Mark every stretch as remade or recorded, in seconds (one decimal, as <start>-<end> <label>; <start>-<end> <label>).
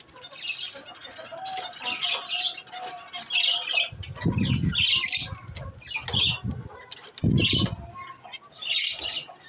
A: 0.0-9.5 recorded